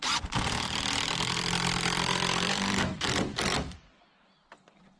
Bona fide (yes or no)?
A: no